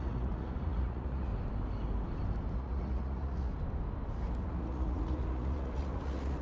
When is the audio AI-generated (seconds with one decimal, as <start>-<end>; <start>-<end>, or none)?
0.0-1.3; 2.5-3.5; 4.4-6.4